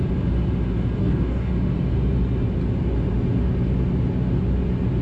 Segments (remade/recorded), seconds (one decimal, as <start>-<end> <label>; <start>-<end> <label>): 0.0-1.0 recorded; 1.0-1.5 remade; 1.5-5.0 recorded